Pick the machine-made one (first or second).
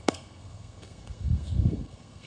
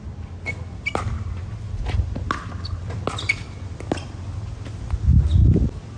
first